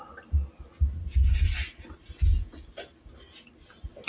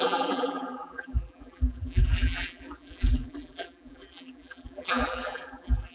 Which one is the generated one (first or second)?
second